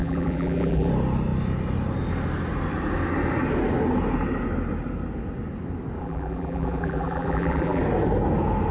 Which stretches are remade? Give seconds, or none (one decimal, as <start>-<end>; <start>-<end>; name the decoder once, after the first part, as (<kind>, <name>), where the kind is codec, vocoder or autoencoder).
0.0-0.9 (vocoder, BigVGAN v2); 6.0-7.8